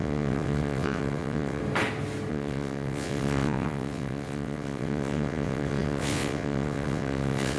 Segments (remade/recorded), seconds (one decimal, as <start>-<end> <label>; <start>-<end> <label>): 0.0-1.6 remade; 1.6-2.3 recorded; 2.3-7.6 remade